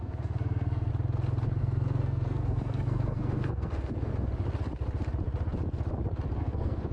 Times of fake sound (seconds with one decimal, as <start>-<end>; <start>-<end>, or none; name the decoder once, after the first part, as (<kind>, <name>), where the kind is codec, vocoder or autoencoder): 0.0-0.9 (codec, SNAC); 1.6-4.1; 6.4-6.9